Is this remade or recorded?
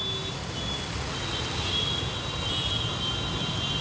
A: recorded